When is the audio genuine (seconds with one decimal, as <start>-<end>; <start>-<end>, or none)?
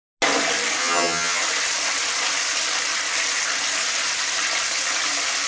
0.0-0.8; 1.4-5.5